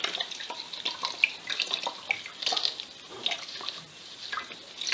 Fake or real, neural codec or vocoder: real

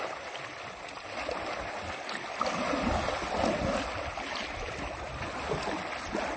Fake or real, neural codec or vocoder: real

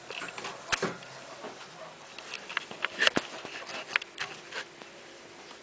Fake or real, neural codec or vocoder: real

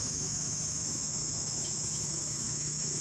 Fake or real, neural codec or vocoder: fake, autoencoder, DAC-VAE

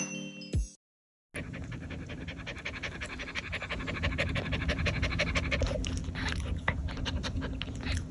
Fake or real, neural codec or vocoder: real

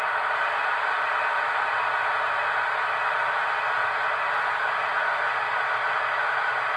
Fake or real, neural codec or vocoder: real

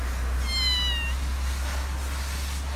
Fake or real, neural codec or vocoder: real